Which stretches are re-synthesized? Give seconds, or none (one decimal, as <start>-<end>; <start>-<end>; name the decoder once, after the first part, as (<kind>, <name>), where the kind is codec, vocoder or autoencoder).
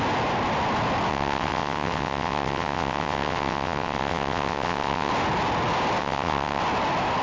1.1-5.1 (vocoder, WaveNeXt); 6.0-6.6